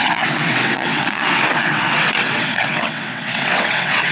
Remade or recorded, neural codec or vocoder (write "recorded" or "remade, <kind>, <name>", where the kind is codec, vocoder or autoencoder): remade, vocoder, WaveNeXt